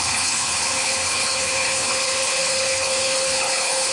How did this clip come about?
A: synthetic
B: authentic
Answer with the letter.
A